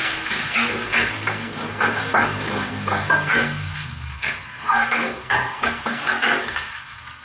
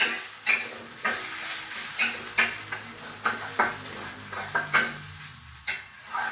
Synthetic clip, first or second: first